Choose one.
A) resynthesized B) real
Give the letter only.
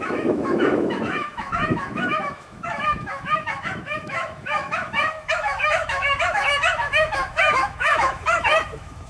A